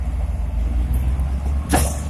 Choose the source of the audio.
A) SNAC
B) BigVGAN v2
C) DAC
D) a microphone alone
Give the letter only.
D